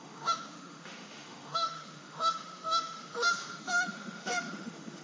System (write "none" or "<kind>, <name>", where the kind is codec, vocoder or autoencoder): autoencoder, DAC-VAE